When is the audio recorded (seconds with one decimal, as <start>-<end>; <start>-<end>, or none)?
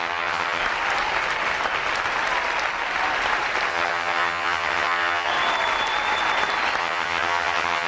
0.6-3.7; 5.3-6.8